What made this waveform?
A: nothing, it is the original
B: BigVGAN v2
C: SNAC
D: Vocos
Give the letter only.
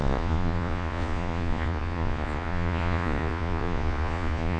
D